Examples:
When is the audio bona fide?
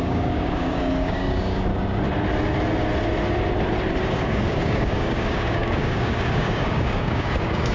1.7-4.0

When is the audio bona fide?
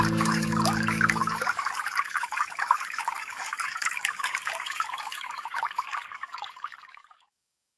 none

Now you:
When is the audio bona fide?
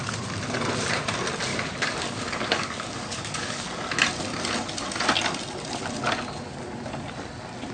0.0-1.5; 4.0-7.7